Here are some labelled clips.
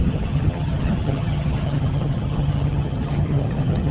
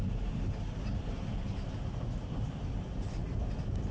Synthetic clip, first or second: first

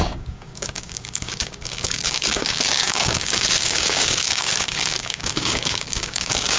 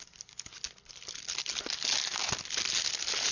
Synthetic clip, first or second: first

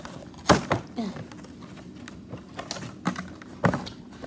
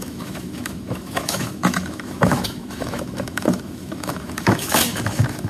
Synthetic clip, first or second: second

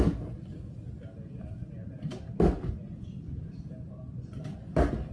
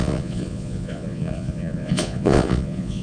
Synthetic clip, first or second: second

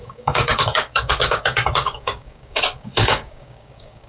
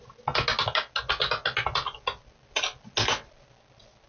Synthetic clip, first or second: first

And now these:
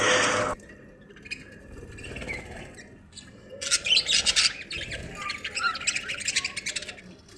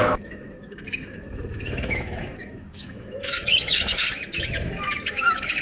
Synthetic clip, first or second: second